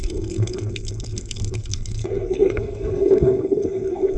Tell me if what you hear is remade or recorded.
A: remade